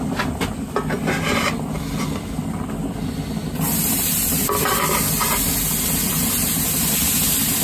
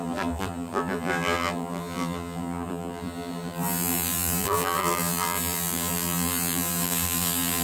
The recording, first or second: first